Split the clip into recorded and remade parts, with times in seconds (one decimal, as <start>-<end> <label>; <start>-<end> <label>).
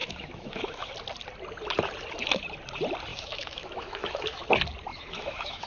0.0-0.9 remade; 0.9-3.1 recorded; 3.1-4.4 remade; 4.4-4.9 recorded; 4.9-5.7 remade